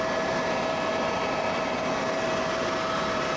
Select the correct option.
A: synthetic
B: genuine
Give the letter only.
A